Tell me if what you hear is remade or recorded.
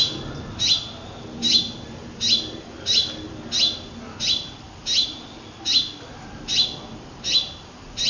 recorded